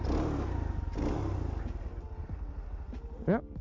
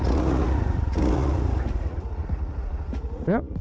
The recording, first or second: first